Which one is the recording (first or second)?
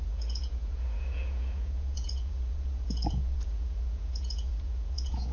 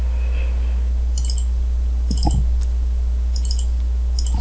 second